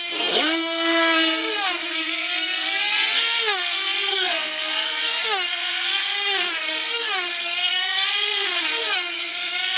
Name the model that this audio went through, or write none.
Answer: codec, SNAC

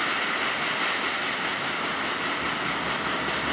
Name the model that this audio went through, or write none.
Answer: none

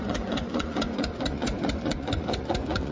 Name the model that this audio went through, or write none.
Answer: vocoder, Vocos